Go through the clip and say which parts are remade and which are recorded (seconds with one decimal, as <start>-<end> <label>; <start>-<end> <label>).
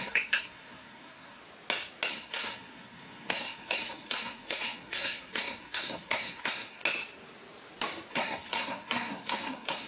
0.0-1.4 remade; 1.4-2.1 recorded; 2.1-6.8 remade; 6.8-8.1 recorded; 8.1-9.9 remade